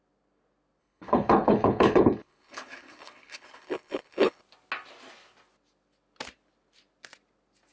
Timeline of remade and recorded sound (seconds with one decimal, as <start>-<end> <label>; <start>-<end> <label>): 0.0-0.8 recorded; 0.8-4.4 remade; 4.4-7.7 recorded